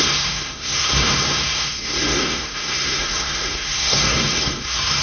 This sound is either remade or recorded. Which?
remade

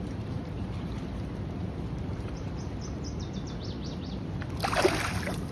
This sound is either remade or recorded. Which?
recorded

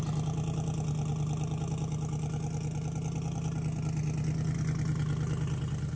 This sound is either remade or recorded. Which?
recorded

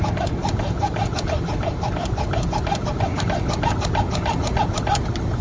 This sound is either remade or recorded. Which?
recorded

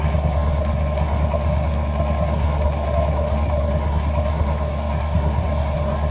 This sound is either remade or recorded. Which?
remade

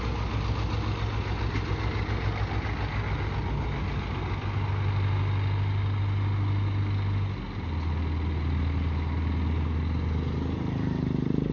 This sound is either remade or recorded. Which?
recorded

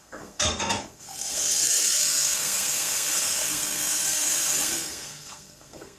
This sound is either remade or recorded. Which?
remade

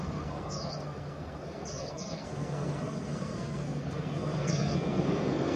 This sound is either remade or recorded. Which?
remade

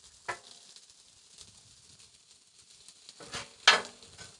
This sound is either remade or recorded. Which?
recorded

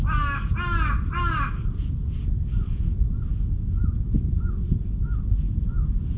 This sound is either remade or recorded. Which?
recorded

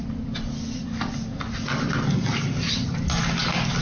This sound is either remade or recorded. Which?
recorded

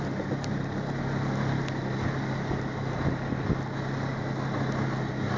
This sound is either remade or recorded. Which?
recorded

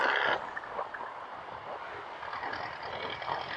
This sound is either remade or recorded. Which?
recorded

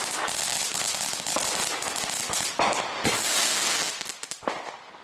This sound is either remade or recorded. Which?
recorded